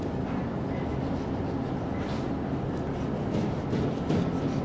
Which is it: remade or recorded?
recorded